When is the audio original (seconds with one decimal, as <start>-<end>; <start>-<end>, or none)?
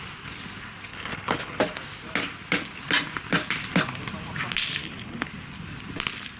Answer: 0.0-0.9; 1.6-4.8; 5.3-6.4